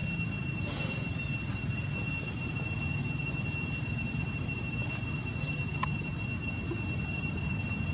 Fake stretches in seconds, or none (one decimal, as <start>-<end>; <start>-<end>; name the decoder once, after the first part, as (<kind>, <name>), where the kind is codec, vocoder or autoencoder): none